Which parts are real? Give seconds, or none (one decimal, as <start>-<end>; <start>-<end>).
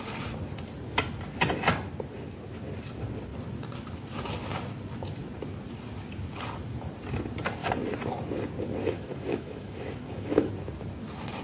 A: 0.0-8.8; 10.5-11.4